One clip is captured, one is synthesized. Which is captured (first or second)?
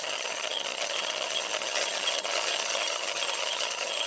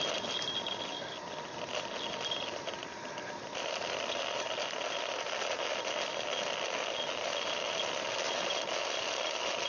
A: second